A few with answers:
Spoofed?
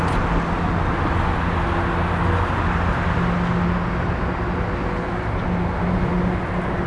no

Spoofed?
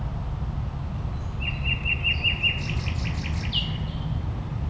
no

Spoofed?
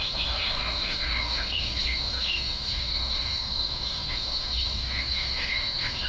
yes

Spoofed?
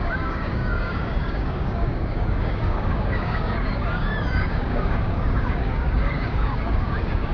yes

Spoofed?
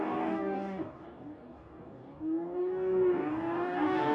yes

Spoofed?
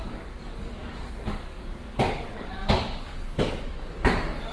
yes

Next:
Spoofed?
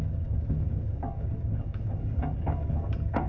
yes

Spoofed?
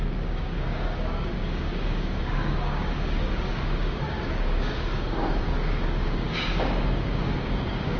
yes